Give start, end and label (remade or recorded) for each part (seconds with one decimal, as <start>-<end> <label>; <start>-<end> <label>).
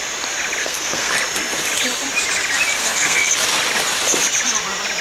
0.0-0.6 recorded; 0.6-1.1 remade; 1.1-2.8 recorded; 2.8-3.3 remade; 3.3-5.0 recorded